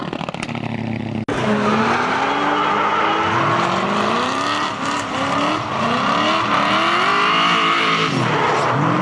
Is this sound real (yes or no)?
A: yes